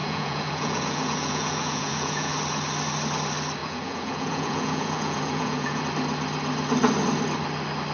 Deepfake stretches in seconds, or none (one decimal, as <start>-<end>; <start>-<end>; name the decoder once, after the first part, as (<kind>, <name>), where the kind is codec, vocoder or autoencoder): 0.0-2.3 (vocoder, Vocos); 3.6-5.8